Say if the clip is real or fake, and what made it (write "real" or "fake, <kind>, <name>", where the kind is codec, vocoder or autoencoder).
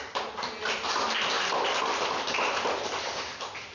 real